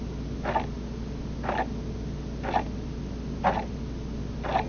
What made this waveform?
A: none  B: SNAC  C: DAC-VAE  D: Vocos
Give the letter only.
A